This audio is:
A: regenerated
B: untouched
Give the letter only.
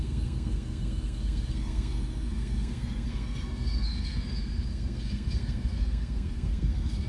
A